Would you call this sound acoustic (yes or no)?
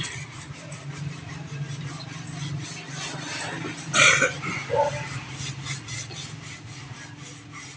yes